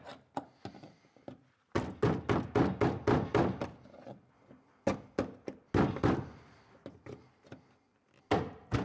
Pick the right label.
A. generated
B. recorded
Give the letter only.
B